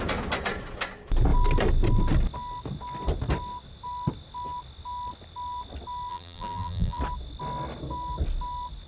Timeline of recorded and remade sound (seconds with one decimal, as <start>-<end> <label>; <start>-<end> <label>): 0.0-6.1 recorded; 6.1-7.0 remade; 7.0-8.9 recorded